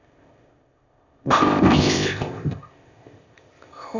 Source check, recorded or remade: remade